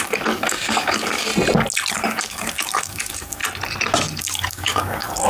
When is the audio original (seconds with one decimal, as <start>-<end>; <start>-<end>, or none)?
1.3-1.9; 3.4-4.2